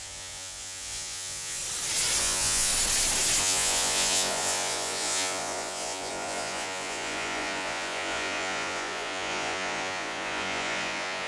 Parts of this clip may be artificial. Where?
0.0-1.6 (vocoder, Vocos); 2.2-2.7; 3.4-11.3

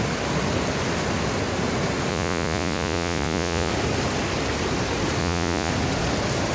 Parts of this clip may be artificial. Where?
2.1-3.7 (vocoder, Vocos); 5.2-5.7